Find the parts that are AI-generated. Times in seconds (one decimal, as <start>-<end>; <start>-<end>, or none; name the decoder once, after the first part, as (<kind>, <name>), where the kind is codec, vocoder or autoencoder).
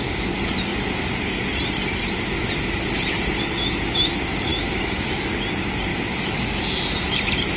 4.5-5.3 (autoencoder, DAC-VAE); 5.9-6.6